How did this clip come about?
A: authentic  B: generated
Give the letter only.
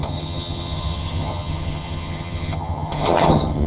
B